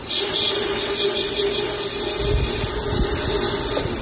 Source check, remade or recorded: recorded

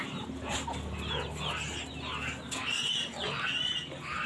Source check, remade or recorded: recorded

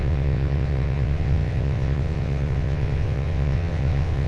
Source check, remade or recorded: remade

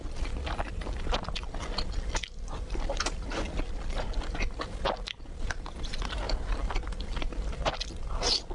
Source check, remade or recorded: recorded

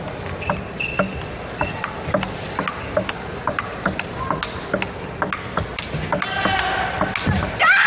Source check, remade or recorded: recorded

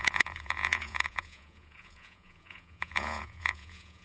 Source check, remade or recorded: remade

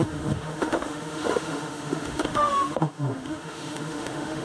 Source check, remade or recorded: remade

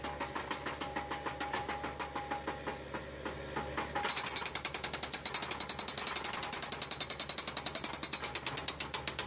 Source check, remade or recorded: recorded